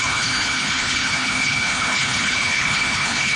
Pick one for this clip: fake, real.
fake